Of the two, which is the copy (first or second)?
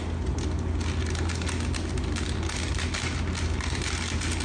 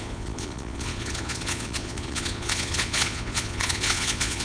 second